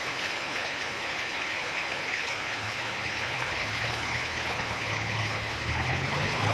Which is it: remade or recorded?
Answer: remade